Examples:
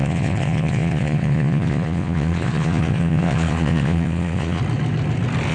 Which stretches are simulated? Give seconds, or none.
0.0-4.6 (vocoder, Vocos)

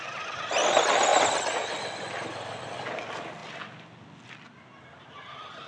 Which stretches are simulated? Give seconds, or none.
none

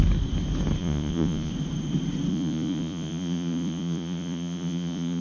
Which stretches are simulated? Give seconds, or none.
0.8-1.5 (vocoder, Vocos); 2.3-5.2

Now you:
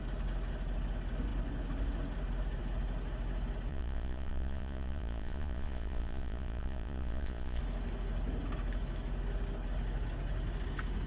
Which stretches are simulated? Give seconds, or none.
3.7-7.6 (vocoder, Vocos)

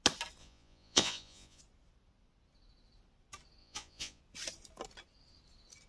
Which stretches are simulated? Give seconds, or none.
0.4-1.6 (vocoder, Vocos); 3.6-4.2

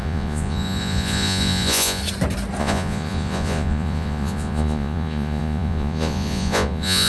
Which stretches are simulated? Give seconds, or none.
0.0-2.0 (vocoder, Vocos); 2.6-7.1

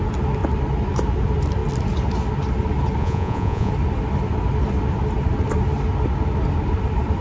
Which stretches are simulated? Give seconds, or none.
3.0-3.7 (vocoder, Vocos)

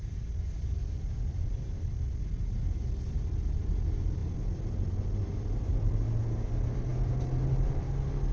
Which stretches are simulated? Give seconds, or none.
none